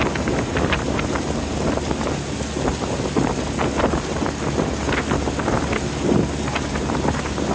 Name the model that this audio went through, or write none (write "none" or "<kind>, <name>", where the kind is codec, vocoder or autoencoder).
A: none